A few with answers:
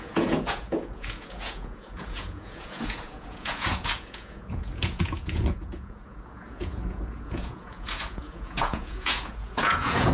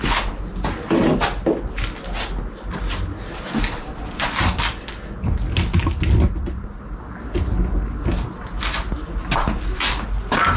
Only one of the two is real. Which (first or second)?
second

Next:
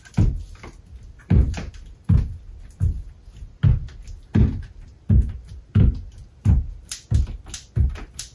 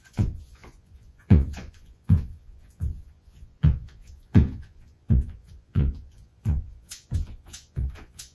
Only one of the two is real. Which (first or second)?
first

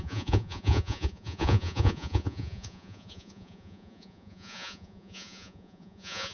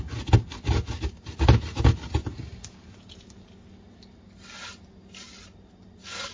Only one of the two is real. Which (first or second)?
second